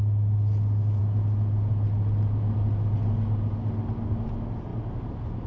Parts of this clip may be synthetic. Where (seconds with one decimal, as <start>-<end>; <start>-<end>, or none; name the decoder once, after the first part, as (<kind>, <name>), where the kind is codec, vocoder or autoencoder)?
none